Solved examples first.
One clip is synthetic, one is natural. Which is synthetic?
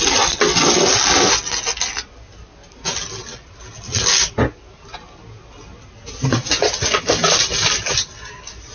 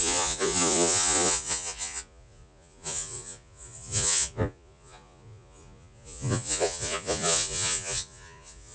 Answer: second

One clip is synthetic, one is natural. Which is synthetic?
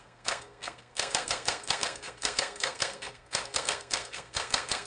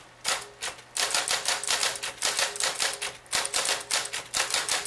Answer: first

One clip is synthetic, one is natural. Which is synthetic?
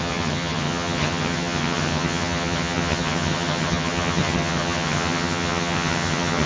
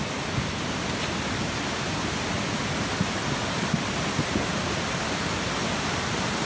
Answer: first